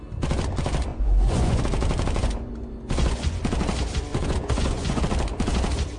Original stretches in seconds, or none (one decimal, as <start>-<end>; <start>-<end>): 0.0-0.9; 1.6-2.2; 3.4-4.1; 5.0-6.0